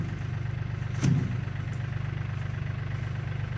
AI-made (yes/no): no